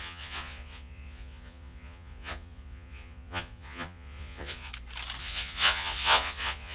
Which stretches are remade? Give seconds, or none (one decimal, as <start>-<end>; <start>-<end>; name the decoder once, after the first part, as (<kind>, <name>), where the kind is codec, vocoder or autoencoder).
0.0-4.7 (vocoder, Vocos); 5.2-6.7